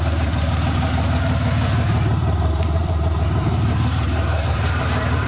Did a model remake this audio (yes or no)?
yes